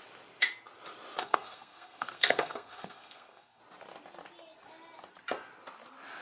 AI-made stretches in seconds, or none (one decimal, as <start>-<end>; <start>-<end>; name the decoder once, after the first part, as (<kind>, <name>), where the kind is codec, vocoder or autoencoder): 1.2-3.6 (codec, SNAC)